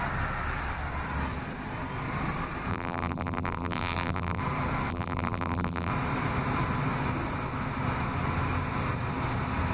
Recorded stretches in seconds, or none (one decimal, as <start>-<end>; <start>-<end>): 0.0-2.7; 4.4-4.9; 5.9-9.7